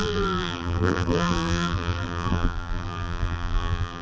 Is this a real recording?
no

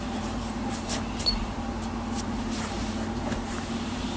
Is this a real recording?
no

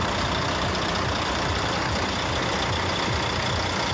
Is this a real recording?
yes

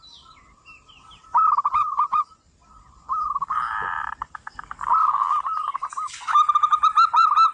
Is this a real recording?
no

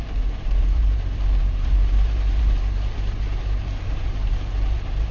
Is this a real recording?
no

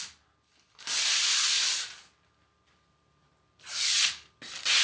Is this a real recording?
yes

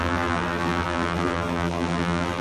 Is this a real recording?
no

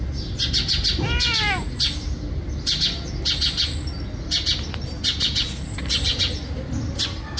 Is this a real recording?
yes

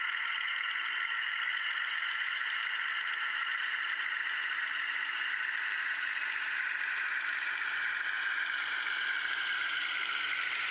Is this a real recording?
no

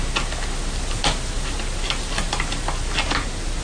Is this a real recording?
yes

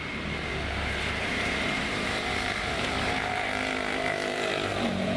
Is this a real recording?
no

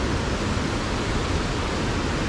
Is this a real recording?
yes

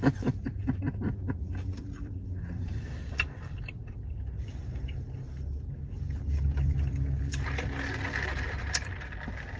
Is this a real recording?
no